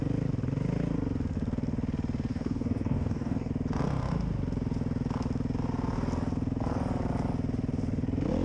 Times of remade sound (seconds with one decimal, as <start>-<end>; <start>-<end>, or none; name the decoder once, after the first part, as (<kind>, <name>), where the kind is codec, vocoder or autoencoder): 2.3-3.5 (codec, DAC)